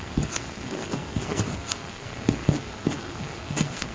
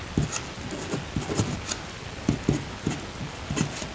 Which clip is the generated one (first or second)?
first